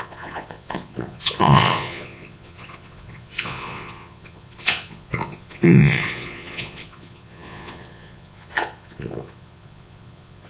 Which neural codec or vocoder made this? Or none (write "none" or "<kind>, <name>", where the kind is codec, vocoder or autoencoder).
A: vocoder, Vocos